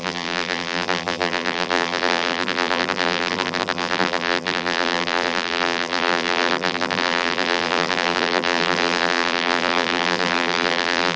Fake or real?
fake